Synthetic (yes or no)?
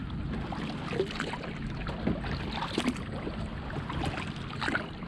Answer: no